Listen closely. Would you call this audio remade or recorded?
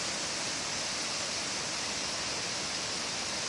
recorded